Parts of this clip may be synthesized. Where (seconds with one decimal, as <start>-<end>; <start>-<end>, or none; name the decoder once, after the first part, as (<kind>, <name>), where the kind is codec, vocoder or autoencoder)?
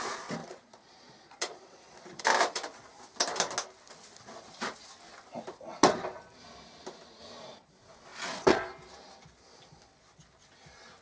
0.4-2.2 (vocoder, Vocos)